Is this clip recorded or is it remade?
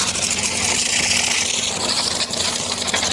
recorded